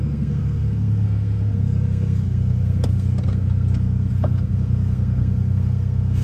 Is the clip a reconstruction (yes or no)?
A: yes